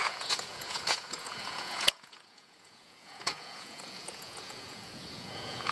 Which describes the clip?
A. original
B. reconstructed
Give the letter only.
B